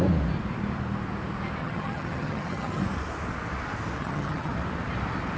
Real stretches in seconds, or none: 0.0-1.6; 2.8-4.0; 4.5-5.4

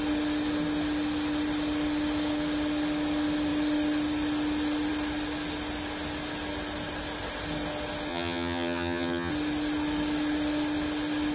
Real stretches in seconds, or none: 0.0-8.1; 9.3-11.3

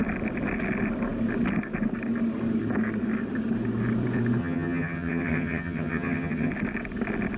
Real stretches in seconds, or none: 0.0-4.4; 6.5-7.4

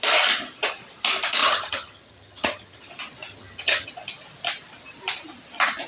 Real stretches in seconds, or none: 0.0-1.4; 2.9-3.3; 3.9-5.9

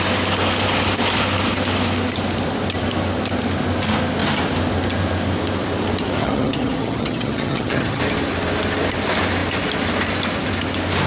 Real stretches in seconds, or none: 0.0-6.2; 8.0-11.1

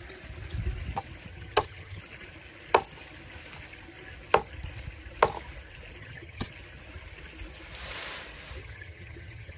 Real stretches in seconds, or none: 0.0-1.3; 2.0-6.0; 6.5-8.6

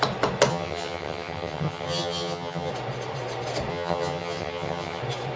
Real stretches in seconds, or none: 0.0-0.5; 2.7-3.7; 5.0-5.4